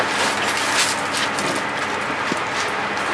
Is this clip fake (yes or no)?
no